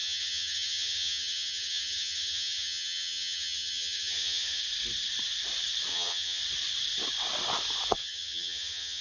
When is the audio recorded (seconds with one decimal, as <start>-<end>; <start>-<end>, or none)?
4.6-5.9; 6.4-8.0